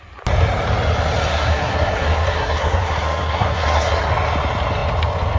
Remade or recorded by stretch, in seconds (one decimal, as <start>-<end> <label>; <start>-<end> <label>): 0.0-1.3 recorded; 1.3-4.0 remade; 4.0-5.4 recorded